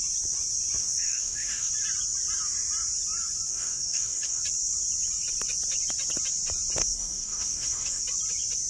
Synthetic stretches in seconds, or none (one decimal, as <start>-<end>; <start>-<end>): 0.8-1.7; 3.5-4.4; 6.8-8.0